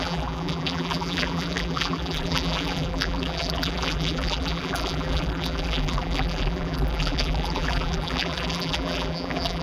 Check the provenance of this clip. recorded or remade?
remade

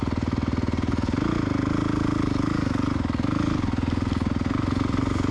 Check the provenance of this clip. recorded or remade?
recorded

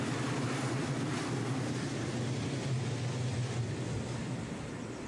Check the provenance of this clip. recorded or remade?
recorded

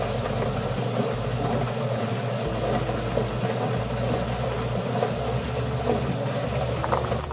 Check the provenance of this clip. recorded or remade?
recorded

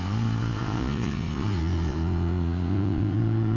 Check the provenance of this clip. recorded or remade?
remade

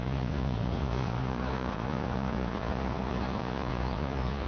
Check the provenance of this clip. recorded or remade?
remade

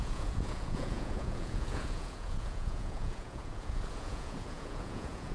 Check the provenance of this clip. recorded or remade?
remade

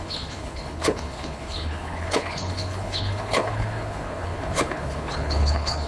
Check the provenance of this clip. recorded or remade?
remade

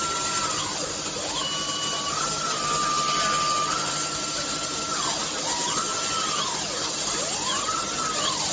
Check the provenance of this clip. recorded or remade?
recorded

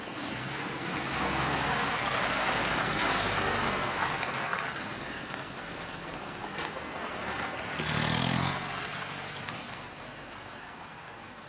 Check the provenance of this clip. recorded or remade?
remade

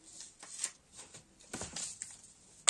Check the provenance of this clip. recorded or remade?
recorded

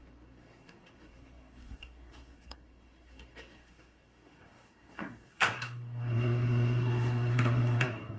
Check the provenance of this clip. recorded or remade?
remade